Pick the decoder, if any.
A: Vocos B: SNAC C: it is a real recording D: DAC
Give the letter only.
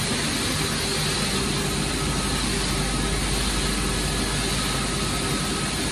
C